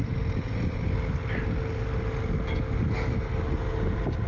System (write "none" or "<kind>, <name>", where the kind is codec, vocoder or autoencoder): none